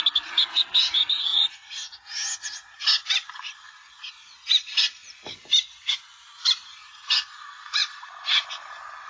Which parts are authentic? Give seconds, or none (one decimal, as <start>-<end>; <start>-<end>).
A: 0.0-9.1